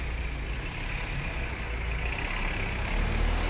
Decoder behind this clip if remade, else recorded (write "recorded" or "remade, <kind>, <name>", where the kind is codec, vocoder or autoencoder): recorded